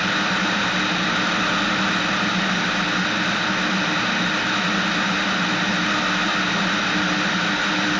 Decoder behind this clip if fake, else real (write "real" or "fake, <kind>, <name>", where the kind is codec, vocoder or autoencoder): real